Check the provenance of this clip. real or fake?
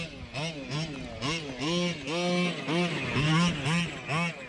real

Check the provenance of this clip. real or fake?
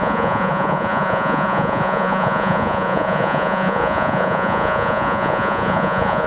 fake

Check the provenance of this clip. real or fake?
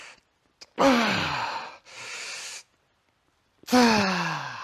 real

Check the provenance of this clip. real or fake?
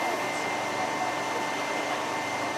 real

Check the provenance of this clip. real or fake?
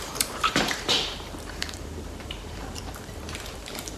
fake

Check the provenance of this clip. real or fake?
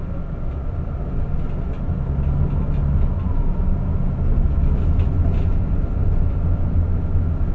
real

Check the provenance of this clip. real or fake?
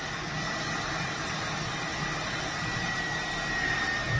real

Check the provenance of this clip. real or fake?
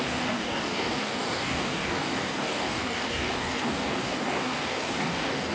fake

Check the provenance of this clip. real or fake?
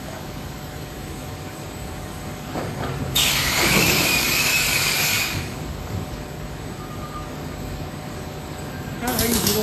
fake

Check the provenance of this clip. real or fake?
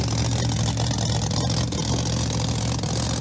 real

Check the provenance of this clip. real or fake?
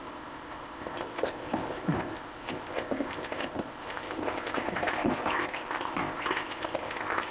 fake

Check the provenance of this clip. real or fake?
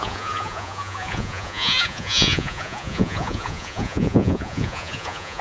fake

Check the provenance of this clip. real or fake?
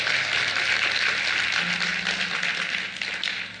real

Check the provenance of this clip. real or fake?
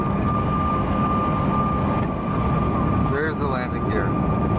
real